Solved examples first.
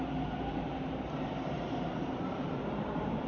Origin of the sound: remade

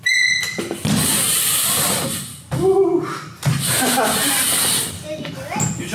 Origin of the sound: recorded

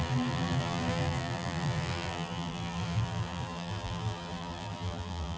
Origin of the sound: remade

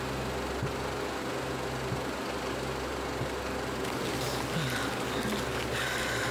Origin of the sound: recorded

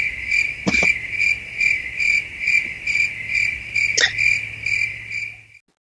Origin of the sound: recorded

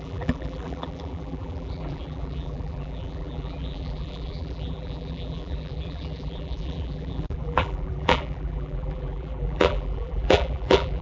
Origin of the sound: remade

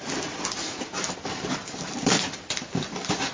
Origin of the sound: remade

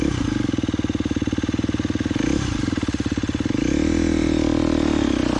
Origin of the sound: recorded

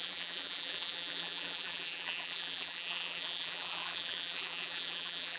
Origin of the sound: remade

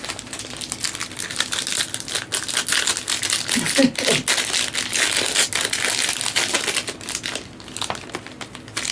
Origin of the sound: recorded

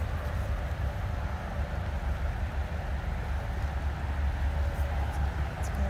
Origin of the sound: recorded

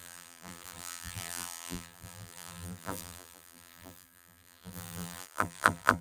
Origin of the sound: remade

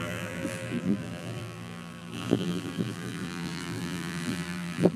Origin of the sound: remade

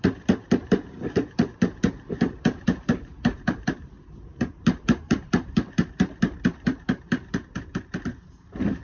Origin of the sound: remade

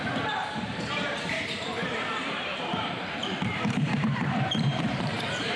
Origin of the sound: remade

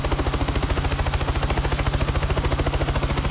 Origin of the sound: recorded